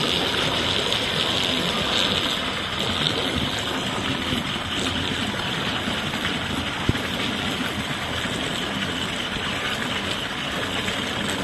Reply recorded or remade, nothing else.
recorded